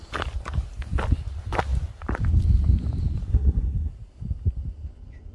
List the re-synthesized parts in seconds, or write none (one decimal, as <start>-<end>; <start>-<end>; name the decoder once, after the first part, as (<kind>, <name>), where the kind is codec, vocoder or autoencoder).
3.3-3.9 (codec, SNAC)